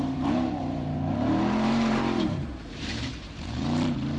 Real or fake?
fake